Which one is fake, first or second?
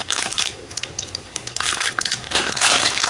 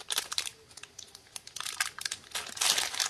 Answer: first